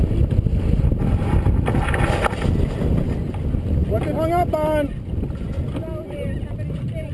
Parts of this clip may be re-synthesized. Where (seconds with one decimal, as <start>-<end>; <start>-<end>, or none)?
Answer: none